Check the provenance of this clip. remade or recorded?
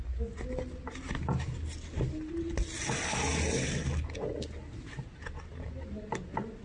recorded